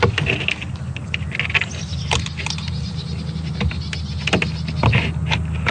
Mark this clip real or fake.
real